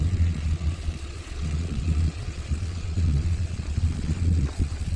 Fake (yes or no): yes